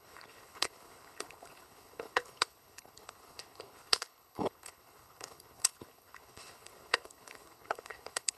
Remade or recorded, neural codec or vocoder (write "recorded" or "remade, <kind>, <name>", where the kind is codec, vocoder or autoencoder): remade, codec, HILCodec